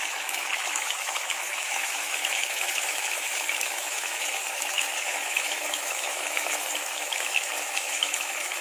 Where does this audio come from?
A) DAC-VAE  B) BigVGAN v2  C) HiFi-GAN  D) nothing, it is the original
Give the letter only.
A